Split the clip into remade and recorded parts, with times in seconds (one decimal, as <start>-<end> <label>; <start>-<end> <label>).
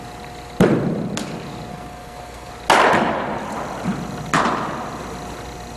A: 0.0-1.7 recorded; 1.7-2.5 remade; 2.5-5.8 recorded